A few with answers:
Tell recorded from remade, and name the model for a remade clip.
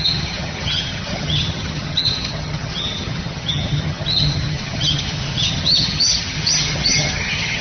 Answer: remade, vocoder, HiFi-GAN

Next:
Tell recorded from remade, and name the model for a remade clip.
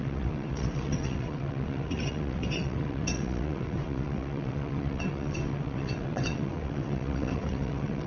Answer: remade, vocoder, WaveNeXt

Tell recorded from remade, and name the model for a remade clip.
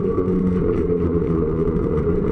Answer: remade, vocoder, Vocos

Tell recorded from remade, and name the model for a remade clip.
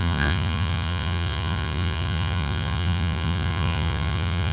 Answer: remade, vocoder, Vocos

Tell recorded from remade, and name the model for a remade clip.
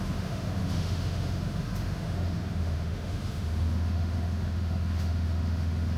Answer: remade, autoencoder, DAC-VAE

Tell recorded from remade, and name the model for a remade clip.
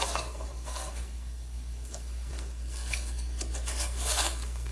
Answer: remade, codec, SNAC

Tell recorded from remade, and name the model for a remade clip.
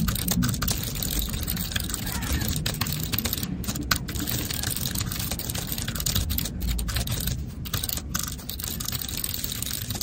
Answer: recorded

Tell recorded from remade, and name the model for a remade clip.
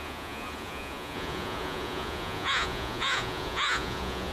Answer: remade, vocoder, Vocos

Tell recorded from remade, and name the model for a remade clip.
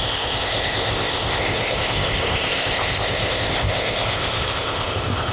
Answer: remade, codec, ZipCodec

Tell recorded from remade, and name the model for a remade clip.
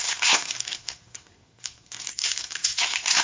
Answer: remade, codec, SNAC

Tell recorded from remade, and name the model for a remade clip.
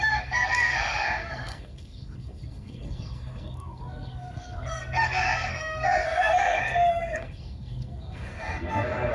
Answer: remade, codec, SNAC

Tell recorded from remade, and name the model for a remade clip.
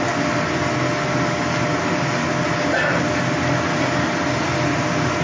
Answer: recorded